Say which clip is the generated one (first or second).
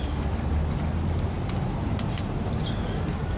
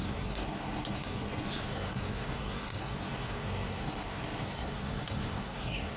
second